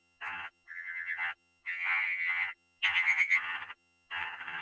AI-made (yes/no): yes